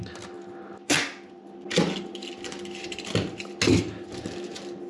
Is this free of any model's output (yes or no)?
yes